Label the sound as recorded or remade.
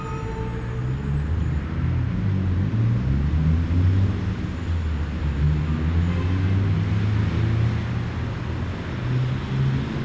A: recorded